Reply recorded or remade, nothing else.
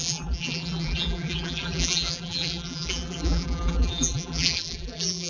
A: remade